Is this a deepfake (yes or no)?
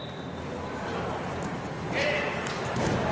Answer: no